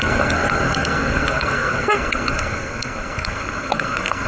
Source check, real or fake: fake